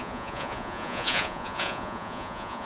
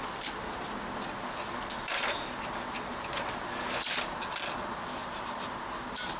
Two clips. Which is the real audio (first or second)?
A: second